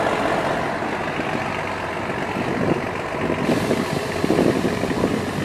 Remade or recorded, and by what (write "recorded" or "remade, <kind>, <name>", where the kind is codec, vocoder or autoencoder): recorded